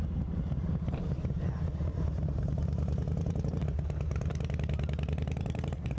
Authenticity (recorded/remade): remade